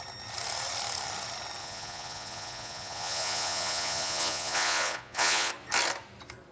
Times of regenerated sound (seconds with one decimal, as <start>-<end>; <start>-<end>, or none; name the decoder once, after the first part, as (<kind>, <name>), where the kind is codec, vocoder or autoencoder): 1.6-5.5 (vocoder, Vocos)